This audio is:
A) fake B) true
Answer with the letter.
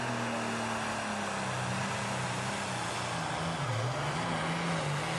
B